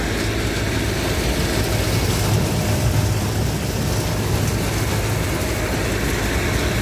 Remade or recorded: recorded